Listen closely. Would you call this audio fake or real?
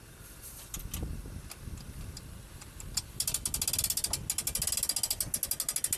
real